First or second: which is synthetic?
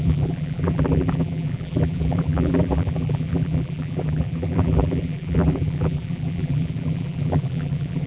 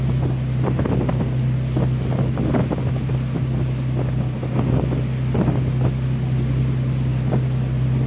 first